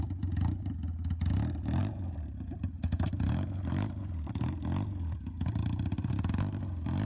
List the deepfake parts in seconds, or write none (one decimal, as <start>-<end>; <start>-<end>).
1.8-4.5; 5.6-6.1